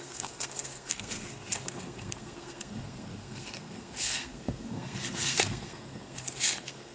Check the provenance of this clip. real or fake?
fake